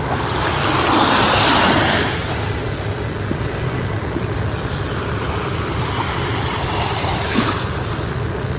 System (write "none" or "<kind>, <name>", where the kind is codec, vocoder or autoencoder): none